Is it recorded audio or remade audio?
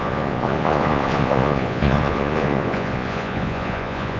remade